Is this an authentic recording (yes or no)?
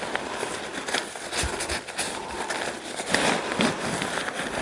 yes